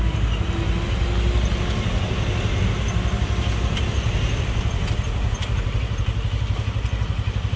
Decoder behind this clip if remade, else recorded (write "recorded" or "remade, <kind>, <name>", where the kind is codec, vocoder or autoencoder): recorded